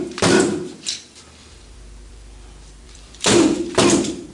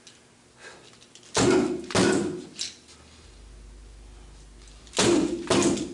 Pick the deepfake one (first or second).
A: first